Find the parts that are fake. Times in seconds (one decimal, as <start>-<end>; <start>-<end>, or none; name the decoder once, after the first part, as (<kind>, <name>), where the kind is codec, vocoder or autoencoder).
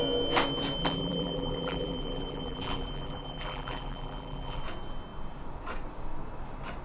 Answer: 0.8-4.6 (vocoder, BigVGAN v2)